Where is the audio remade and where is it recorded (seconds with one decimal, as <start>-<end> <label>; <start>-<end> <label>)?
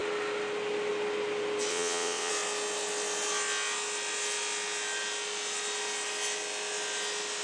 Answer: 0.0-1.7 recorded; 1.7-2.3 remade; 2.3-7.4 recorded